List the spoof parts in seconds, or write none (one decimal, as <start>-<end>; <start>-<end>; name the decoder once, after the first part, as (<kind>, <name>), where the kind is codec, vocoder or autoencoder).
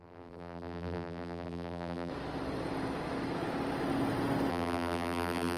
0.0-2.1 (vocoder, BigVGAN v2); 4.5-5.6